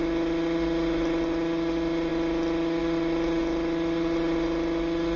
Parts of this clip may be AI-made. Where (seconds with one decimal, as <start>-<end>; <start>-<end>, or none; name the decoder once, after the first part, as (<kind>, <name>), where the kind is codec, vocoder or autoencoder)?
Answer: none